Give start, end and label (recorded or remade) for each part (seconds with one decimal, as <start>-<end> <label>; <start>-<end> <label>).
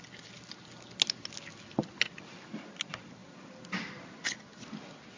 0.0-5.2 recorded